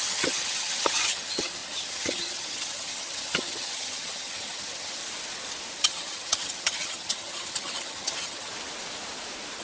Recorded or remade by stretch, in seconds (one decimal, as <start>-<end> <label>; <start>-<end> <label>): 0.0-5.0 remade; 5.0-5.8 recorded; 5.8-8.5 remade; 8.5-9.6 recorded